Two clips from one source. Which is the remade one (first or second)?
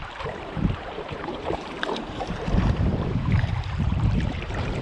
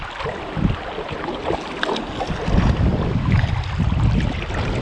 first